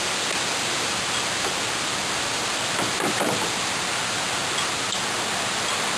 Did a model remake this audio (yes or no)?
no